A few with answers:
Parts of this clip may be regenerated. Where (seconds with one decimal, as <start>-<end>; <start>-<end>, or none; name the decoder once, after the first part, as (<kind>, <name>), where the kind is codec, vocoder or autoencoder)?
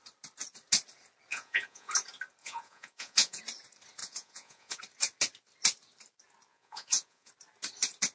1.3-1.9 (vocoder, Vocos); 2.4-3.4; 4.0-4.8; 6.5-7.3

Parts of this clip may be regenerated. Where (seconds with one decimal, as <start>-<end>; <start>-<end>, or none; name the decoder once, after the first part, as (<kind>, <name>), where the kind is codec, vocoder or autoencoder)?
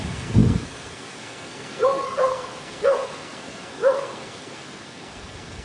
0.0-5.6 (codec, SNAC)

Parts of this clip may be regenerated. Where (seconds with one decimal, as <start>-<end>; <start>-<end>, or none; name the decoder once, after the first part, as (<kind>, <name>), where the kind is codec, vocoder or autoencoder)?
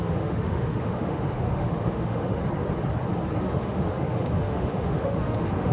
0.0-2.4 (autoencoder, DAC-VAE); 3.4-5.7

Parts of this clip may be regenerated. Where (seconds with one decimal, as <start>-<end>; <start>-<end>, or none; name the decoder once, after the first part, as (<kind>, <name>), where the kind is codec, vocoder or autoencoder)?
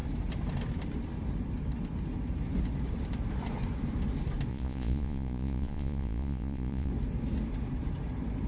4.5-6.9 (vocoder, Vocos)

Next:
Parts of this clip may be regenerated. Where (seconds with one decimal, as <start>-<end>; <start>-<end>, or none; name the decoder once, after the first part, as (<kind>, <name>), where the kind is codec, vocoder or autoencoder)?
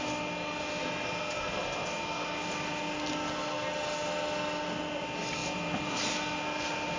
none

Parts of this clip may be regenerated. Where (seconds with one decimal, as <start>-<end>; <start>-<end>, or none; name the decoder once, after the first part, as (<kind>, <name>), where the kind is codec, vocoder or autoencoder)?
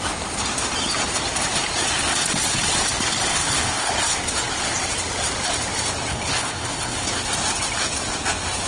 3.3-3.9 (codec, HILCodec); 6.1-7.1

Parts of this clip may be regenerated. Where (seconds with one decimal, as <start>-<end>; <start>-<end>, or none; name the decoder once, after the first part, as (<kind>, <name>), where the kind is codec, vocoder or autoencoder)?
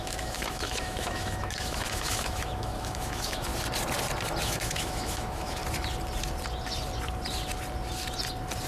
0.0-3.5 (autoencoder, DAC-VAE); 4.4-5.6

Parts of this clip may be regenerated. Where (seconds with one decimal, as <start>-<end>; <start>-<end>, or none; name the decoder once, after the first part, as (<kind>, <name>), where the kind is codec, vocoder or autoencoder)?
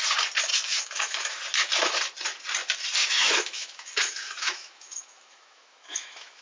0.5-1.4 (autoencoder, DAC-VAE); 3.0-6.4